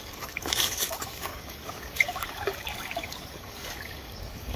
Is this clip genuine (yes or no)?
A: no